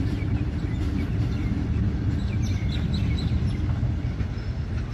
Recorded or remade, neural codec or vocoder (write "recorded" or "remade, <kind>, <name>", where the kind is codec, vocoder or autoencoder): recorded